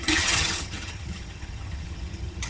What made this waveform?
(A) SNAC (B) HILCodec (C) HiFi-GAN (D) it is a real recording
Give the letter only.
C